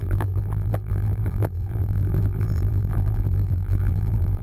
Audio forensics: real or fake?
fake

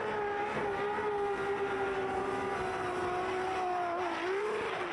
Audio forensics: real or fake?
real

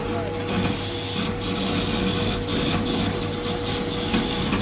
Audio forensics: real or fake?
real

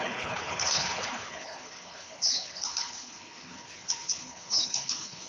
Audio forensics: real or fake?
fake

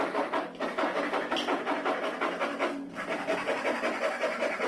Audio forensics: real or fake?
real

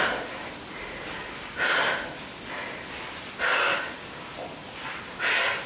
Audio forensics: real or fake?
real